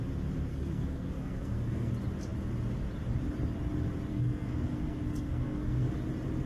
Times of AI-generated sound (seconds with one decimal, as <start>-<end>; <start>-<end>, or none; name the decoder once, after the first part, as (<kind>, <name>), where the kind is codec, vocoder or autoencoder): 0.5-1.9 (codec, SNAC); 4.1-5.9